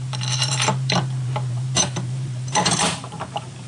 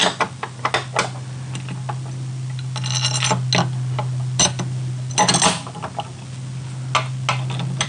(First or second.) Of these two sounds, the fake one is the first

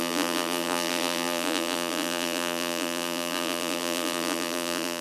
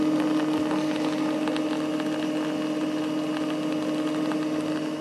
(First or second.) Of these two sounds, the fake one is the first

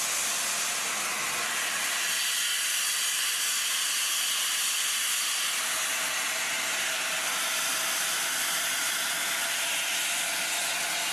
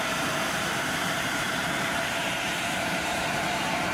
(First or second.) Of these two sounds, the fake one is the second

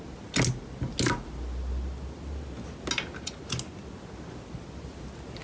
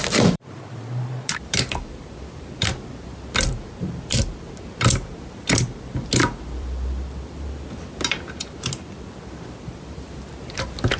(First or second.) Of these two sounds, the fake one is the second